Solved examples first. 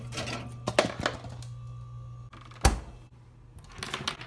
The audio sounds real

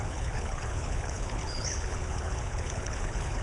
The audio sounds fake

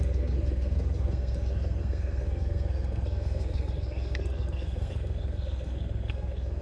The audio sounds fake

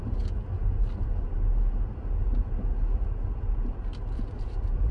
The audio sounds real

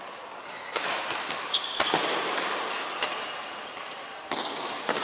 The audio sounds real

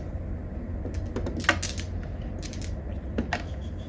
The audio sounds real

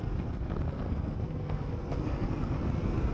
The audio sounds fake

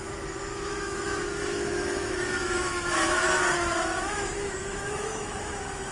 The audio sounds fake